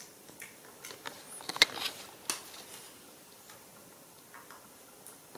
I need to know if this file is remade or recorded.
recorded